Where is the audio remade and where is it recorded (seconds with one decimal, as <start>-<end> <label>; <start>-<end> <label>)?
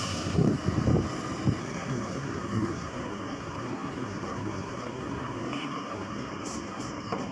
0.0-0.5 remade; 0.5-1.6 recorded; 1.6-7.3 remade